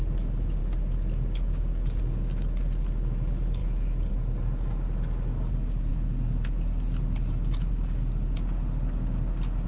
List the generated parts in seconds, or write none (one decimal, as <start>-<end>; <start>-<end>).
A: none